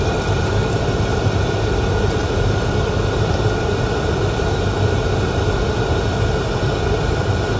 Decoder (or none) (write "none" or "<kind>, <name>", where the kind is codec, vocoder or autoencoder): vocoder, BigVGAN v2